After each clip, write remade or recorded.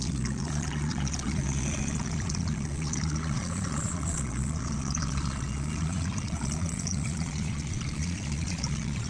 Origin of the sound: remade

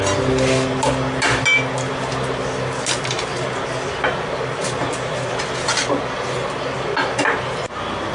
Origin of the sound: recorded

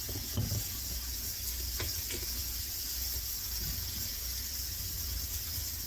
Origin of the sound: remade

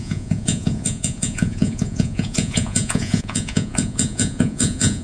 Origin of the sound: remade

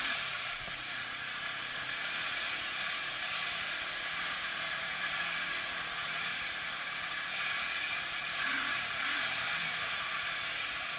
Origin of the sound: remade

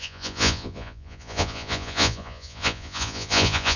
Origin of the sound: remade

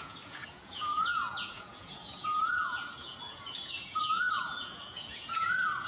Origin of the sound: remade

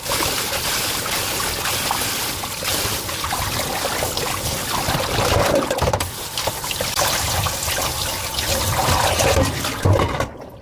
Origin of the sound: recorded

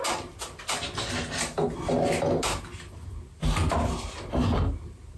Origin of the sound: recorded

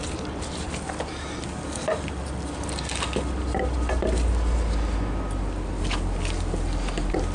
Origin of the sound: recorded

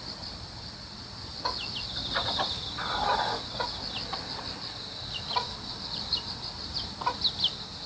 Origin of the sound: recorded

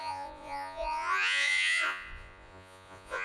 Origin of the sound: remade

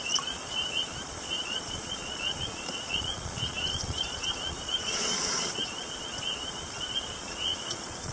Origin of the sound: remade